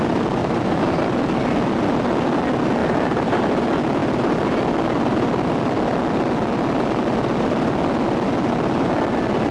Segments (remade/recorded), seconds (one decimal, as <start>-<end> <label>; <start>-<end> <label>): 0.0-0.4 recorded; 0.4-1.0 remade; 1.0-2.8 recorded; 2.8-3.5 remade; 3.5-9.5 recorded